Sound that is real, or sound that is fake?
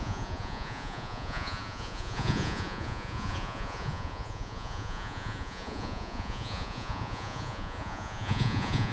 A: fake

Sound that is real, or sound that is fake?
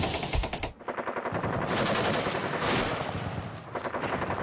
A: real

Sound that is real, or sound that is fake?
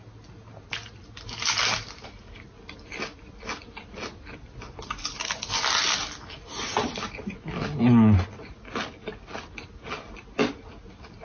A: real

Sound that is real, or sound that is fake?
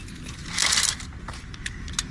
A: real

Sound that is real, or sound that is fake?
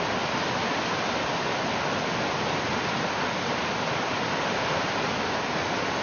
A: real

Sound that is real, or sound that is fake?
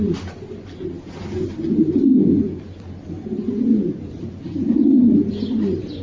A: real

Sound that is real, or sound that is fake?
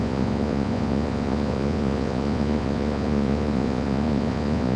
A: fake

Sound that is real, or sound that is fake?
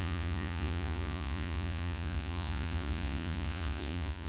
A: fake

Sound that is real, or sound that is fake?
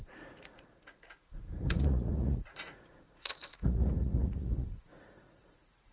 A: fake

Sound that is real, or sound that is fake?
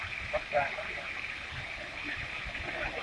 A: real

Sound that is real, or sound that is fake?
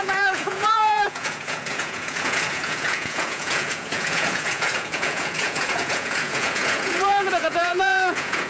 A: fake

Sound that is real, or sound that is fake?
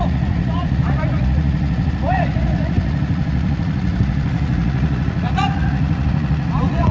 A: fake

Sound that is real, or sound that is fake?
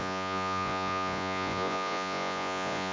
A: fake